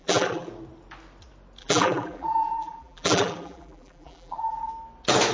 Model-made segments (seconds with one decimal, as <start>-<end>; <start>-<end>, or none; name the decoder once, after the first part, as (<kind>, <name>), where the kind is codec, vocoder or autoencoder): 0.0-0.5 (vocoder, BigVGAN v2); 1.6-4.7